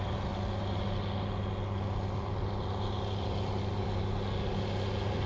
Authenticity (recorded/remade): recorded